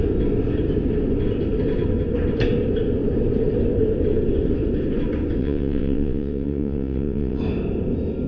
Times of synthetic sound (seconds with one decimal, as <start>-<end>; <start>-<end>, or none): 5.4-7.4